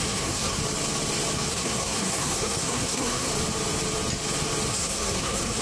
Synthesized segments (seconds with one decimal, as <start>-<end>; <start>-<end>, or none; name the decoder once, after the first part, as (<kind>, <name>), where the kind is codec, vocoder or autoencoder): 0.0-0.6 (codec, SNAC); 1.5-3.3; 4.7-5.6